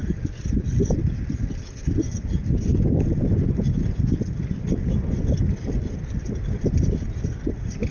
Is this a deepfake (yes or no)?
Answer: no